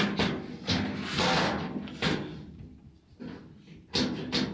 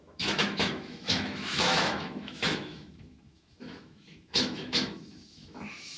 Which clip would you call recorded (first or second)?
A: first